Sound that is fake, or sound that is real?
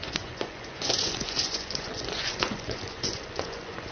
fake